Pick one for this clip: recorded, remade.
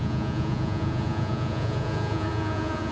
remade